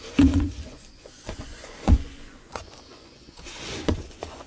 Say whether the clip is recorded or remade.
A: remade